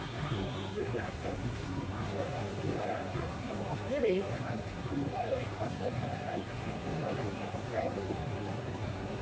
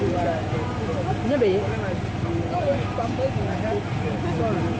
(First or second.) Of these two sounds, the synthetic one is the first